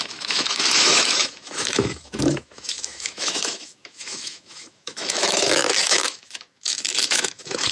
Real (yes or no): no